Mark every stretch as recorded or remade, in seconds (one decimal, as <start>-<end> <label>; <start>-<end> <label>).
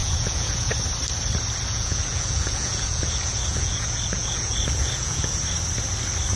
0.0-0.7 remade; 0.7-1.7 recorded; 1.7-5.4 remade; 5.4-6.4 recorded